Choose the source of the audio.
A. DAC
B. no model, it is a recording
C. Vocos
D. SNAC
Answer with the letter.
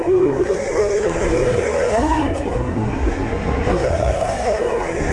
D